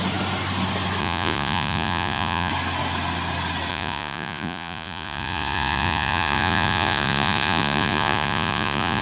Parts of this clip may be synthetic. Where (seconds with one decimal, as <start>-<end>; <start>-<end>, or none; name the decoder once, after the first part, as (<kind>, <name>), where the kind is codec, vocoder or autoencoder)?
1.0-2.5 (vocoder, Vocos); 3.7-9.0